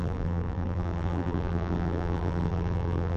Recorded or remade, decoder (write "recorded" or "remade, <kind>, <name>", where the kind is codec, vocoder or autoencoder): remade, vocoder, BigVGAN v2